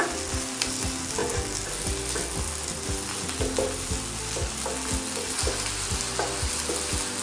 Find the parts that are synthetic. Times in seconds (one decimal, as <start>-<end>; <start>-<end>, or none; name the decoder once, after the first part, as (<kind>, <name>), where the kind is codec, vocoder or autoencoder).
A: none